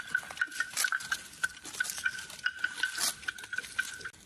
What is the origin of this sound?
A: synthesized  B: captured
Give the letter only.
B